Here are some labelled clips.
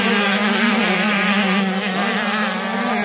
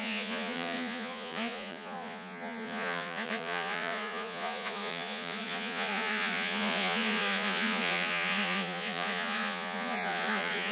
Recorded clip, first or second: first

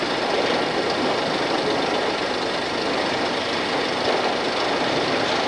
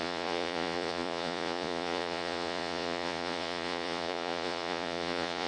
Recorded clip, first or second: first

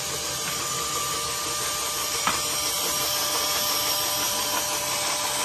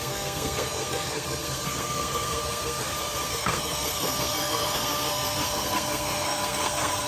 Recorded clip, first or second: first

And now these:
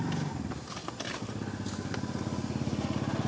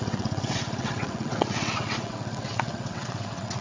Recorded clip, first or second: first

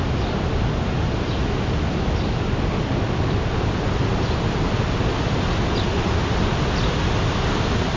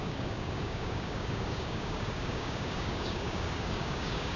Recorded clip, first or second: first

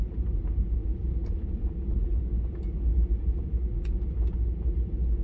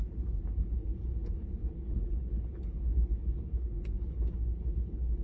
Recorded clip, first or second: first